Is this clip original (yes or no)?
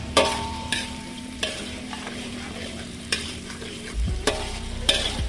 no